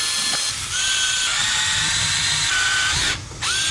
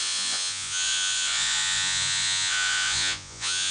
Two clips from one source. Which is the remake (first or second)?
second